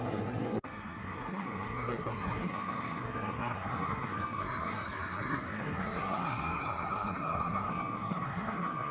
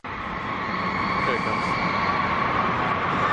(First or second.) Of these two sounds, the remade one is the first